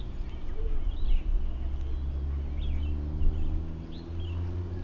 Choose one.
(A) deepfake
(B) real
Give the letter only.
B